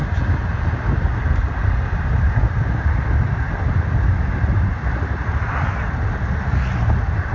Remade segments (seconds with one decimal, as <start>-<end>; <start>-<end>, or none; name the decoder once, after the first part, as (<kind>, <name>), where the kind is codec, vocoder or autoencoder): none